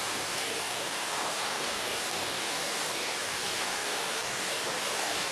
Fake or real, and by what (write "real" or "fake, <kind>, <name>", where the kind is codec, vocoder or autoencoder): fake, codec, DAC